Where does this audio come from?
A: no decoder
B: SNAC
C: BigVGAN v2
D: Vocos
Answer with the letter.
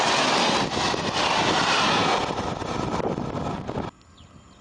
A